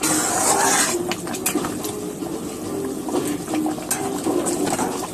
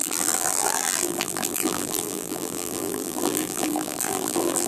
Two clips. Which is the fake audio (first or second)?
second